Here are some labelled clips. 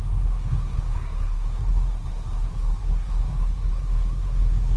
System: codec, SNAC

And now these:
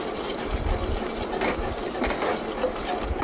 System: none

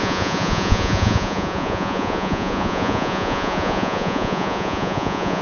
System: vocoder, Vocos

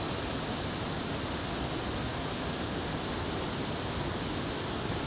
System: none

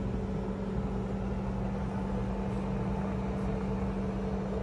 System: none